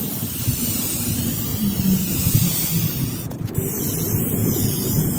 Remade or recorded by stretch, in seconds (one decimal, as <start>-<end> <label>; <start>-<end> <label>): 0.0-1.5 recorded; 1.5-3.5 remade; 3.5-4.4 recorded; 4.4-5.2 remade